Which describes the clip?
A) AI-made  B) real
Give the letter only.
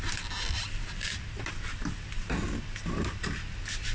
B